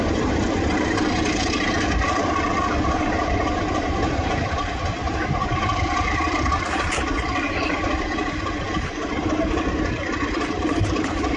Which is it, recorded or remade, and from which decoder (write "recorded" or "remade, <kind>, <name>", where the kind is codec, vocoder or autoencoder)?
remade, vocoder, BigVGAN v2